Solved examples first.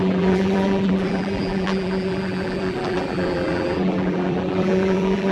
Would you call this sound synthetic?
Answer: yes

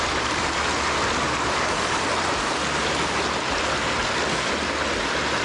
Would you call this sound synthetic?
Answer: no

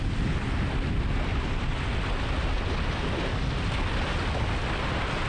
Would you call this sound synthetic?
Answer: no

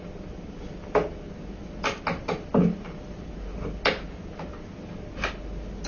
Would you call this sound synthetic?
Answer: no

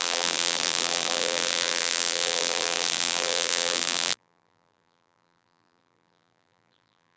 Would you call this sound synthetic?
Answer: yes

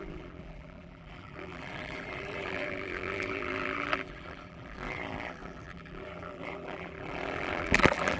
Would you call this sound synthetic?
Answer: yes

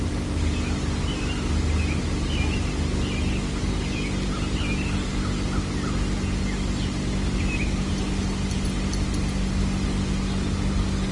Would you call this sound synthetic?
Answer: no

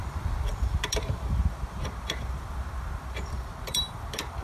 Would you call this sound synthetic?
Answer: yes